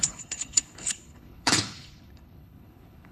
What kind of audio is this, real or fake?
fake